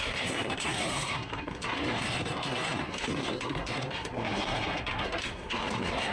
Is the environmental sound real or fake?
fake